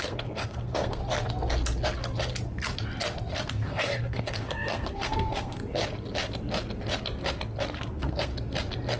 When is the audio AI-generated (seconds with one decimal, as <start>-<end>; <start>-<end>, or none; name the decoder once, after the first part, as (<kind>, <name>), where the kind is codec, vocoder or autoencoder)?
0.0-1.0 (codec, SNAC); 3.5-5.6; 7.9-8.3

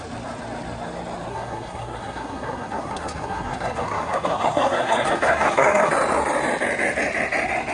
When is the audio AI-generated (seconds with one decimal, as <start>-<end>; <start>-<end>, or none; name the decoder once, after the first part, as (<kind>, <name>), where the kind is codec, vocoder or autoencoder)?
1.3-5.9 (codec, SNAC)

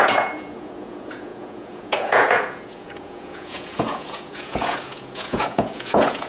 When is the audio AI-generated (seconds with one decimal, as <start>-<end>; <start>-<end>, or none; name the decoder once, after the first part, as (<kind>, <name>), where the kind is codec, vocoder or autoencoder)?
0.0-6.3 (vocoder, Vocos)

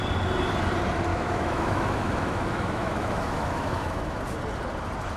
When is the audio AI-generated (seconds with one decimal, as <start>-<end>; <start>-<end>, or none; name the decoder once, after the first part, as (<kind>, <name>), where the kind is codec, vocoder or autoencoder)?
1.1-4.2 (autoencoder, DAC-VAE)

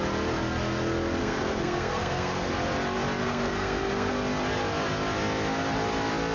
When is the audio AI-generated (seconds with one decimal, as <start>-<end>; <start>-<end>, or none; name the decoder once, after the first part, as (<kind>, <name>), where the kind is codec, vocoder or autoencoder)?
1.2-2.5 (codec, SNAC); 3.2-4.1

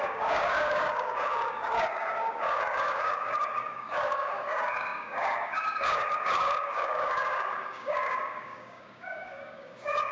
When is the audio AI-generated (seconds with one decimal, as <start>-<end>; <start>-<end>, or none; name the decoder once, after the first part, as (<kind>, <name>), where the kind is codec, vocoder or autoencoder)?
0.0-10.1 (codec, DAC)

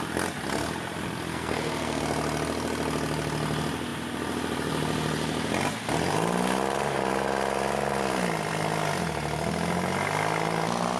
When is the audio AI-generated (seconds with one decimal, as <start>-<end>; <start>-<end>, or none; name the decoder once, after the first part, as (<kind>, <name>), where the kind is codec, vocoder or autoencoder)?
1.3-2.0 (codec, SNAC)

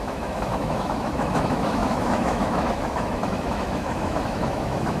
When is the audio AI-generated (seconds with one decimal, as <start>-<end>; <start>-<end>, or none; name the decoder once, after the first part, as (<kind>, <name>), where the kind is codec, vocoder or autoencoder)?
0.0-5.0 (autoencoder, DAC-VAE)